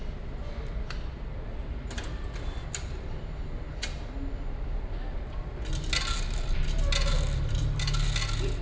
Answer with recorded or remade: recorded